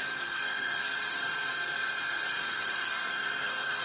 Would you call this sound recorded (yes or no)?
no